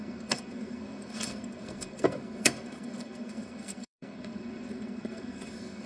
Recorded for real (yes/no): no